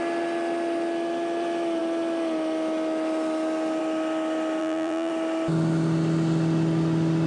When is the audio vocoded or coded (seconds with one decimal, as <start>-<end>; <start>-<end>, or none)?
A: 4.6-5.1